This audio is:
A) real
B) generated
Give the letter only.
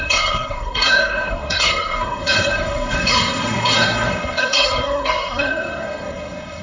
B